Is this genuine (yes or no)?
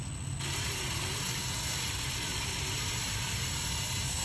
yes